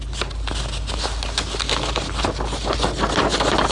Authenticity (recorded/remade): recorded